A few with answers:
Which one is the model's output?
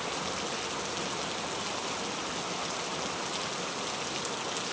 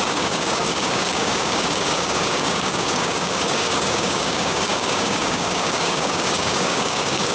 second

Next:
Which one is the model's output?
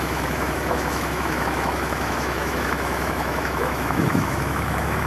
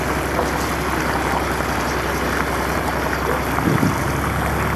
first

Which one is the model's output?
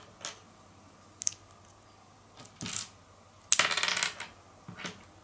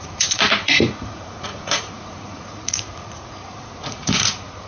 second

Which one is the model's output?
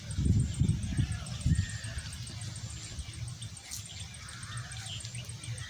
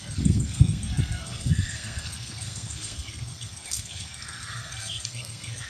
second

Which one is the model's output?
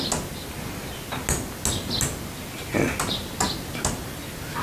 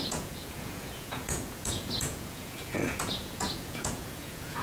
second